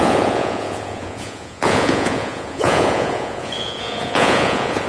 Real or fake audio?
fake